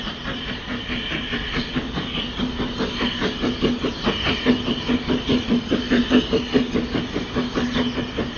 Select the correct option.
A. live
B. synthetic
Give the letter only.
A